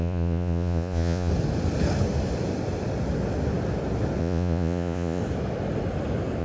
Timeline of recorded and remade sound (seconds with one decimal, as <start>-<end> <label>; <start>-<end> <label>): 0.0-1.3 remade; 1.3-4.2 recorded; 4.2-5.2 remade; 5.2-6.4 recorded